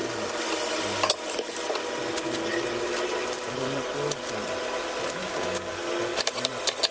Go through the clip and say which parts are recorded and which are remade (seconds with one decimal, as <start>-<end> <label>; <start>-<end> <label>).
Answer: 0.0-5.2 recorded; 5.2-5.8 remade; 5.8-6.9 recorded